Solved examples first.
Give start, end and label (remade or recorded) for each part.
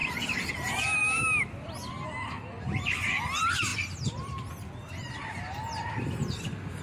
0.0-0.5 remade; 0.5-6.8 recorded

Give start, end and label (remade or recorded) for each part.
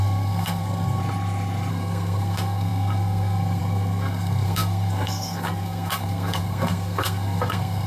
0.0-1.0 remade; 1.0-1.7 recorded; 1.7-7.9 remade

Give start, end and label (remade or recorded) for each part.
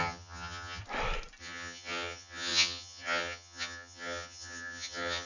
0.0-0.8 remade; 0.8-1.4 recorded; 1.4-5.3 remade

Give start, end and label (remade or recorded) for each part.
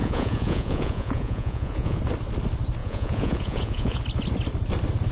0.0-2.0 remade; 2.0-2.8 recorded; 2.8-4.0 remade; 4.0-5.1 recorded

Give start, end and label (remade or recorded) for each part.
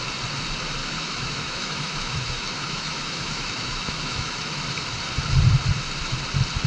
0.0-0.8 recorded; 0.8-4.6 remade; 4.6-6.7 recorded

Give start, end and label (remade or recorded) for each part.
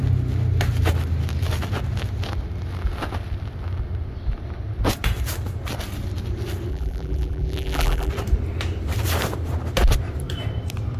0.0-6.7 recorded; 6.7-8.1 remade; 8.1-11.0 recorded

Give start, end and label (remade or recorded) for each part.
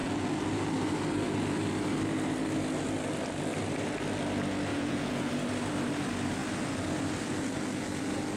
0.0-4.7 recorded; 4.7-5.3 remade; 5.3-8.4 recorded